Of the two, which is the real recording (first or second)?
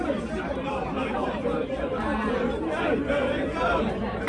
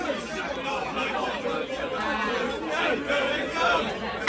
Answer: second